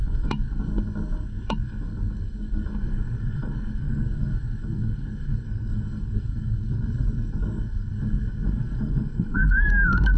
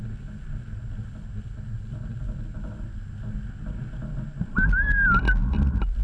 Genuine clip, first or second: second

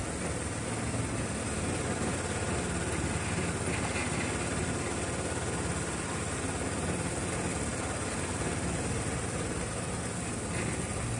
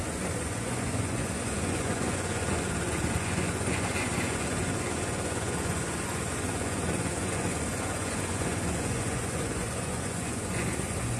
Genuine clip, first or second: first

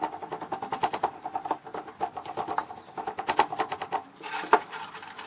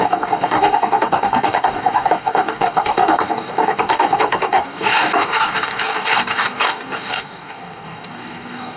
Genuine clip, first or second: first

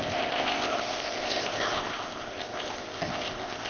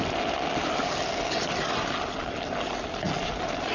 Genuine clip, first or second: second